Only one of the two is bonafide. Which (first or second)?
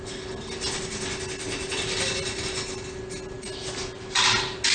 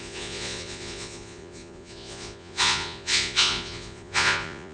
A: first